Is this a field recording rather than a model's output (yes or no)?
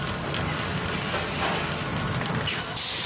yes